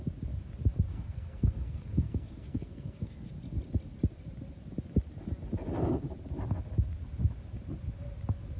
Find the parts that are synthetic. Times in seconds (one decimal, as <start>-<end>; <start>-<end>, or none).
0.9-3.3